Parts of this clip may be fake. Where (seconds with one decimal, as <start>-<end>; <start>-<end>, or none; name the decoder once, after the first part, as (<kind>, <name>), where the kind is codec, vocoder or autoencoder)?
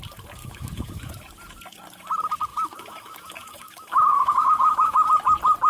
0.4-1.2 (autoencoder, DAC-VAE); 2.5-5.1